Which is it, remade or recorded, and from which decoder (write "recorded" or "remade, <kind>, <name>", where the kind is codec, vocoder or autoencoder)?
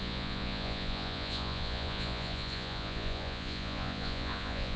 remade, vocoder, Vocos